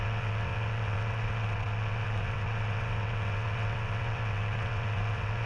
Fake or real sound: fake